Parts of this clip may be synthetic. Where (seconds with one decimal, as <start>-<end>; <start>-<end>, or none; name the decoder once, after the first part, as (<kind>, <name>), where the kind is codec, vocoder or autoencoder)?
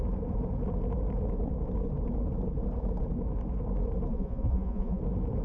4.1-5.0 (vocoder, Vocos)